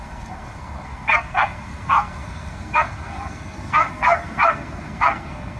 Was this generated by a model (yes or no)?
yes